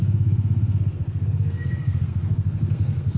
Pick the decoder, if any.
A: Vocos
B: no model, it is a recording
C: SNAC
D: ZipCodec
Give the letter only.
C